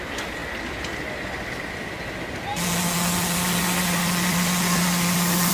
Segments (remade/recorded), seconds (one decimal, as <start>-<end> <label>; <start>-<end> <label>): 0.0-5.5 recorded